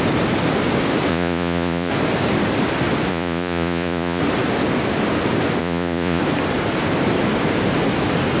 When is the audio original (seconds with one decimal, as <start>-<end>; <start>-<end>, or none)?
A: 0.0-1.1; 1.9-3.1; 4.2-5.6; 6.2-8.4